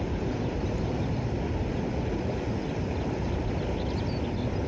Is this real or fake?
real